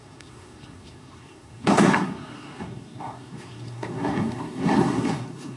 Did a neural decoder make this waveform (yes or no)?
yes